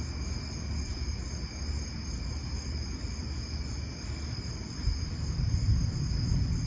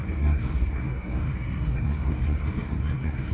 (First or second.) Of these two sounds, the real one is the first